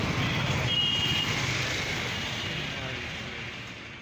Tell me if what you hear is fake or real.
real